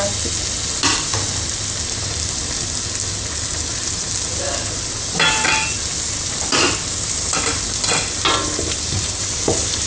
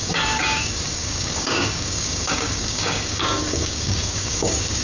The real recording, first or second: first